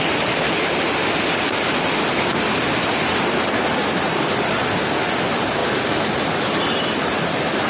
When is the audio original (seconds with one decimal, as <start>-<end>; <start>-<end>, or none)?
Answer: 0.0-7.7